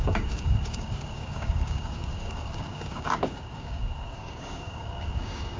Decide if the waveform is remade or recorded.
remade